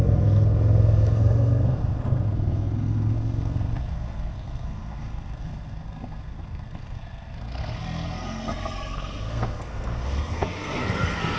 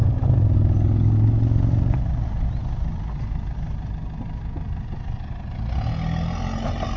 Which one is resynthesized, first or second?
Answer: first